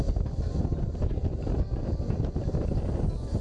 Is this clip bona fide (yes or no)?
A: yes